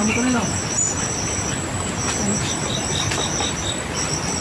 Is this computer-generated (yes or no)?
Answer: no